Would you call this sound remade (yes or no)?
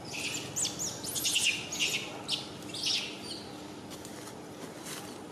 no